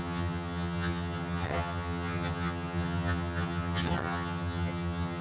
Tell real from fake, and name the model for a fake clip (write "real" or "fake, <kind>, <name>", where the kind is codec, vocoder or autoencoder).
fake, vocoder, HiFi-GAN